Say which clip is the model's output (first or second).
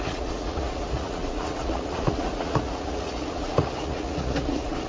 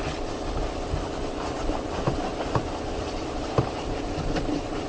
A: first